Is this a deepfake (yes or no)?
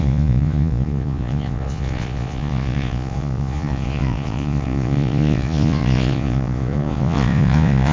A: yes